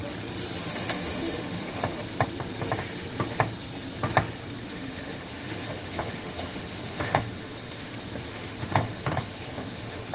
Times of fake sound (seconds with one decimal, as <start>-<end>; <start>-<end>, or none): 0.6-2.0; 4.7-7.9; 8.3-10.1